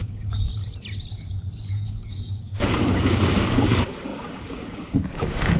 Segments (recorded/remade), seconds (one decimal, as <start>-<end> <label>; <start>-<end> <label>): 0.0-0.5 remade; 0.5-1.7 recorded; 1.7-5.6 remade